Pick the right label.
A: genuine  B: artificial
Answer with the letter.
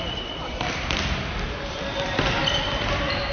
B